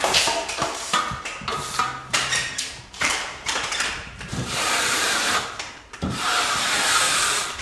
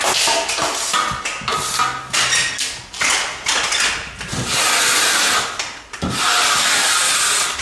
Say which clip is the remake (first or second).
first